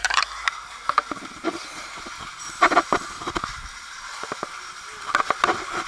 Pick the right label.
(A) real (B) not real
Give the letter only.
A